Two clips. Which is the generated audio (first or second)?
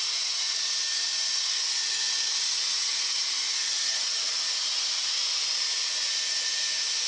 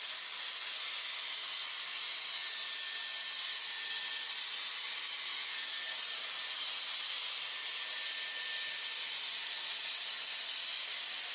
first